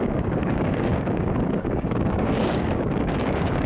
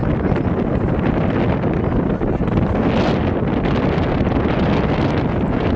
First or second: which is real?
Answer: second